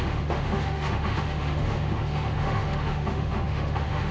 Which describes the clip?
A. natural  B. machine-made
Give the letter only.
B